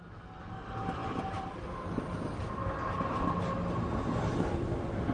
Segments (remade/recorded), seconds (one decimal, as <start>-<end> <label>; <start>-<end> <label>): 0.0-5.1 recorded